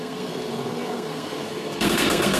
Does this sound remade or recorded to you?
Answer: remade